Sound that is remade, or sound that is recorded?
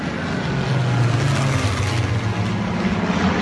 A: recorded